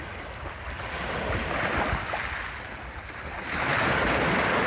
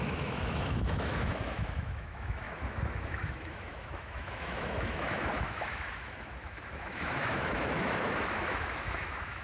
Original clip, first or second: first